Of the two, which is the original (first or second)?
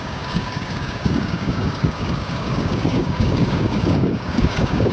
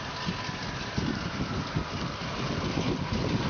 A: second